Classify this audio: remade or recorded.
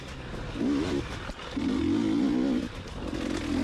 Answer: recorded